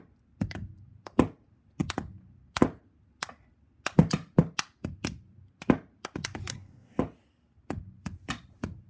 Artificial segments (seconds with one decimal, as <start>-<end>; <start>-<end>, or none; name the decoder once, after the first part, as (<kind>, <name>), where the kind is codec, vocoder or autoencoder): 6.5-7.0 (codec, SNAC)